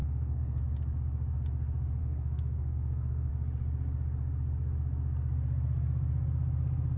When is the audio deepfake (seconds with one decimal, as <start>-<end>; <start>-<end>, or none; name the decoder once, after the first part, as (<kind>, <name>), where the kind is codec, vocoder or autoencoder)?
0.0-0.6 (codec, SNAC); 2.0-3.3